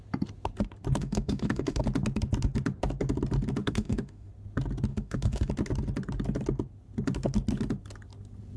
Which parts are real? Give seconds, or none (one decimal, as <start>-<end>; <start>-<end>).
0.0-1.0; 1.8-3.6; 4.3-4.9; 5.5-8.6